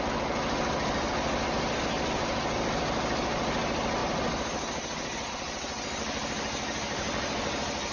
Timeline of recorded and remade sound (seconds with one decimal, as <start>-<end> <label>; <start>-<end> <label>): 0.0-7.9 recorded